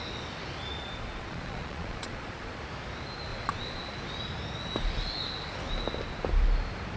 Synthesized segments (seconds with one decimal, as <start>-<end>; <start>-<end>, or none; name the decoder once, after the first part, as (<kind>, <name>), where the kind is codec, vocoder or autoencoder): 0.8-2.6 (vocoder, Vocos); 3.3-3.8